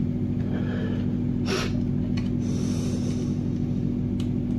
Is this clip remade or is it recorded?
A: recorded